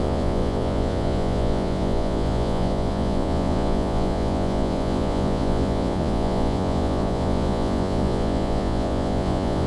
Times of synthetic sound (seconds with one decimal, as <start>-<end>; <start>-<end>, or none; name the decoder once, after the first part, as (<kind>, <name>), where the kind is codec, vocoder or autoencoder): 0.0-9.7 (vocoder, Vocos)